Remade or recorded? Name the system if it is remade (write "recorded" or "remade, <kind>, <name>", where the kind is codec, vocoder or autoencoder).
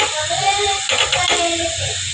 recorded